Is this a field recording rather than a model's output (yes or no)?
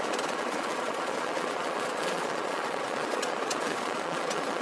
no